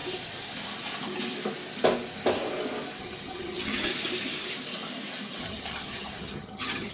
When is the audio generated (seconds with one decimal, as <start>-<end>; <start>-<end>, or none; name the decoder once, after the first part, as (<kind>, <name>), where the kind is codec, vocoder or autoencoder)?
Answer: 3.0-3.9 (vocoder, HiFi-GAN); 5.4-6.9